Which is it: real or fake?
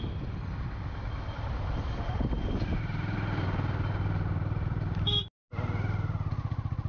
real